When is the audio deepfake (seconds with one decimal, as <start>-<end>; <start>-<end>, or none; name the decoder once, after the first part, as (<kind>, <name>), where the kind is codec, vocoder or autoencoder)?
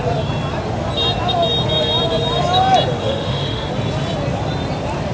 3.0-3.7 (autoencoder, DAC-VAE)